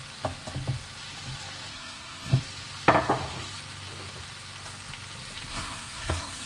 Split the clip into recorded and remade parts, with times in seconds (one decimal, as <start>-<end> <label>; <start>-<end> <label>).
0.0-1.7 recorded; 1.7-2.4 remade; 2.4-5.5 recorded; 5.5-6.5 remade